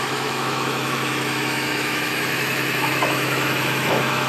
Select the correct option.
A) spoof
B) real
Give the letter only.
A